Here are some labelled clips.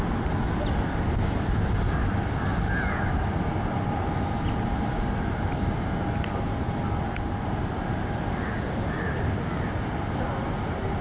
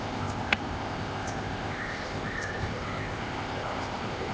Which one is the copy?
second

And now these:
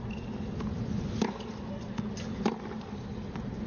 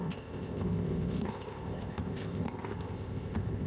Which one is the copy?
second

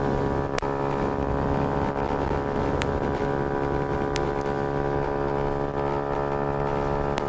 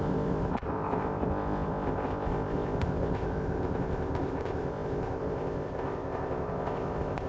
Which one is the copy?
second